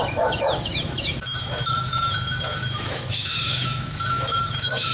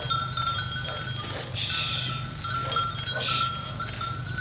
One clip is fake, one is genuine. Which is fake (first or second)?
first